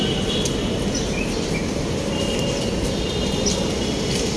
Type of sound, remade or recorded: recorded